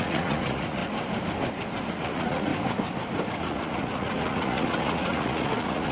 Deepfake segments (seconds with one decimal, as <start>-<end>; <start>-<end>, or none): 0.0-0.8; 1.9-2.5; 3.4-5.9